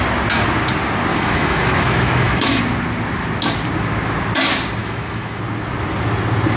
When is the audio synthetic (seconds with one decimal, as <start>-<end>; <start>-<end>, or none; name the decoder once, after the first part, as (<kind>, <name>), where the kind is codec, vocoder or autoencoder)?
1.1-2.6 (autoencoder, DAC-VAE); 4.8-5.4